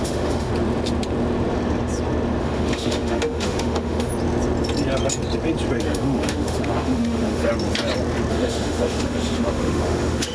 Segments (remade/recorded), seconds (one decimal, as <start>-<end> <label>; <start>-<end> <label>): 0.0-0.5 remade; 0.5-2.4 recorded; 2.4-4.1 remade; 4.1-5.8 recorded; 5.8-7.5 remade; 7.5-8.3 recorded; 8.3-10.3 remade